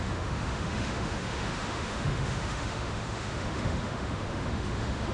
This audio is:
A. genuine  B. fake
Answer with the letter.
B